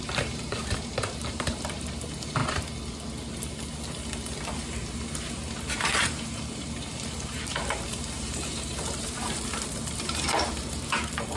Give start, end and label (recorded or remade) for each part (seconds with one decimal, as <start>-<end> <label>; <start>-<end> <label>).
0.0-2.4 remade; 2.4-4.5 recorded; 4.5-11.4 remade